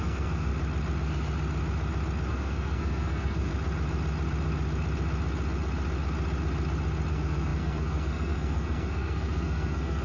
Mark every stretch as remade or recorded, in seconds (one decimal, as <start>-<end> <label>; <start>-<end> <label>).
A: 0.0-0.5 remade; 0.5-2.3 recorded; 2.3-3.5 remade; 3.5-7.1 recorded; 7.1-10.0 remade